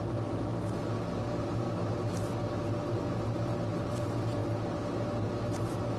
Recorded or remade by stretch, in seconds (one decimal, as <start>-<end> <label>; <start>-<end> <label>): 0.0-6.0 recorded